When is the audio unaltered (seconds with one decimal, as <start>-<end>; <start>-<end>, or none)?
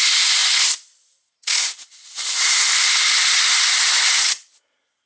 0.0-5.1